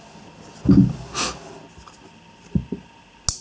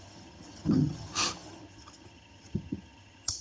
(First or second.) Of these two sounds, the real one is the first